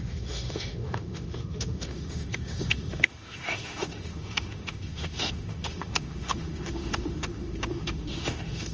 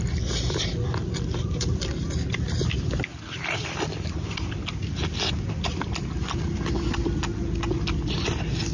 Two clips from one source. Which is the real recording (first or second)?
second